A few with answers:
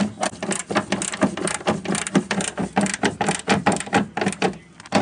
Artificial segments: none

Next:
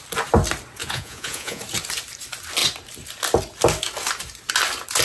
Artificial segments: 0.8-1.6 (vocoder, Vocos)

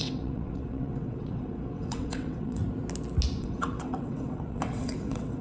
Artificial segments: 0.0-2.6 (vocoder, WaveNeXt); 3.4-5.4